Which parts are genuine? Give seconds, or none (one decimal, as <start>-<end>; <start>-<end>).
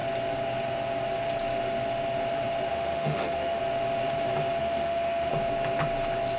0.0-2.7; 3.6-4.6; 5.3-6.4